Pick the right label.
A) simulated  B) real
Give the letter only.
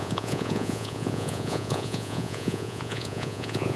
A